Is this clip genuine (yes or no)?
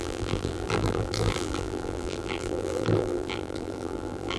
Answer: no